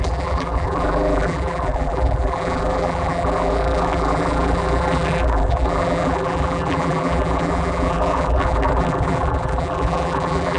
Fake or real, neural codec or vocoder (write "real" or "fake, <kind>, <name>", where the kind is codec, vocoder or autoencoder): fake, vocoder, BigVGAN v2